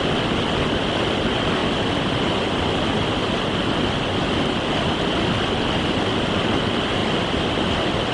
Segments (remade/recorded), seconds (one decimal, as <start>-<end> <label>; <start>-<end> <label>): 0.0-8.1 recorded